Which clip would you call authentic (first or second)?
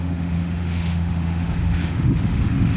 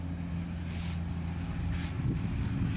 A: second